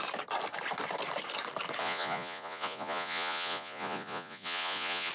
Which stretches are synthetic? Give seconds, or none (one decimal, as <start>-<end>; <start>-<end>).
1.8-5.1